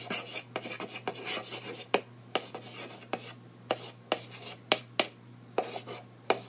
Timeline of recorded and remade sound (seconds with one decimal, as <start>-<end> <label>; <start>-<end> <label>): 0.0-6.5 recorded